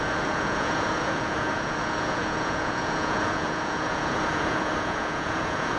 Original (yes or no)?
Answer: no